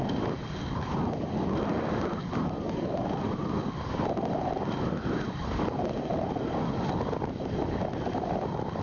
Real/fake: real